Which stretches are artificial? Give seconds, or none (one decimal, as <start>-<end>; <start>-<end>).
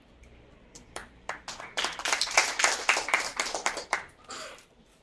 0.0-1.0; 1.6-2.4; 3.0-5.0